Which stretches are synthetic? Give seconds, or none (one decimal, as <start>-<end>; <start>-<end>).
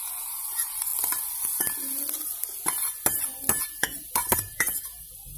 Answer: 0.0-0.9; 3.6-5.4